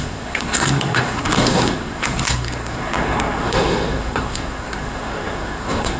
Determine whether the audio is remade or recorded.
remade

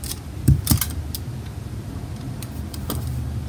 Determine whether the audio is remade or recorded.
recorded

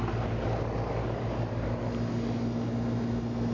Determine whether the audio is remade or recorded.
recorded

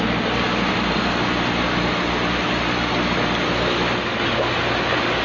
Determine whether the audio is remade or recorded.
recorded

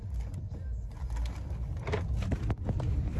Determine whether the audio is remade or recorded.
recorded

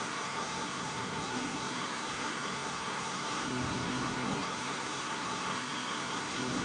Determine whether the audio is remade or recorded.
remade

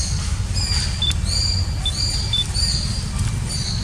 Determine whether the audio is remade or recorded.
recorded